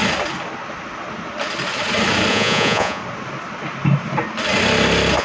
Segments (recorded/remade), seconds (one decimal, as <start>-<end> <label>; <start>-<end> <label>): 0.0-2.3 recorded; 2.3-3.0 remade; 3.0-5.2 recorded